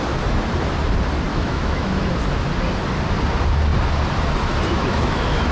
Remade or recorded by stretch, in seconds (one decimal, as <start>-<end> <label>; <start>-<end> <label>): 0.0-1.3 recorded; 1.3-2.1 remade; 2.1-4.7 recorded; 4.7-5.5 remade